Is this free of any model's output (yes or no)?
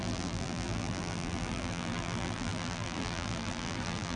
no